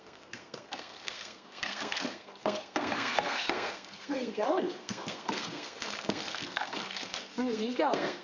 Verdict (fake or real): fake